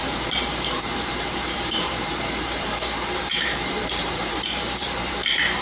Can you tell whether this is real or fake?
fake